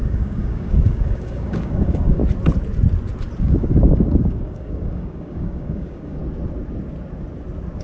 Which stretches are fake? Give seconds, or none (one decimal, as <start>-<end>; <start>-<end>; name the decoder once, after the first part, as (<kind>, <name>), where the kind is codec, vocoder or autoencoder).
0.0-2.2 (codec, DAC); 3.4-6.2